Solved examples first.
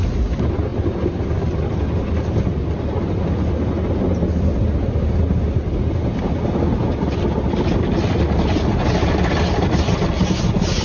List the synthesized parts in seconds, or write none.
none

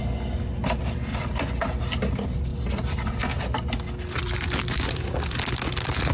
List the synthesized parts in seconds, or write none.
1.1-2.0 (vocoder, BigVGAN v2)